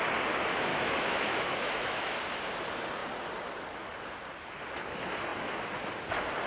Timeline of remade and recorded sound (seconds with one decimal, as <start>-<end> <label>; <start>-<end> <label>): 0.0-0.7 recorded; 0.7-2.2 remade; 2.2-6.5 recorded